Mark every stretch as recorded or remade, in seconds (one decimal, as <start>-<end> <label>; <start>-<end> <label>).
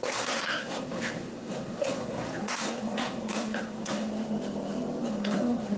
0.0-4.1 remade; 4.1-5.0 recorded; 5.0-5.8 remade